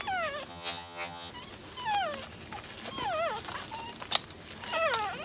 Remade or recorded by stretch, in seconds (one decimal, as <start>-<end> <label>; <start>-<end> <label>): 0.0-0.5 recorded; 0.5-1.3 remade; 1.3-5.2 recorded